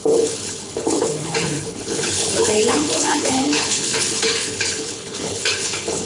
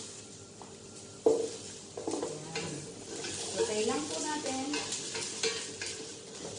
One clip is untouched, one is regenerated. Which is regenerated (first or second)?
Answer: first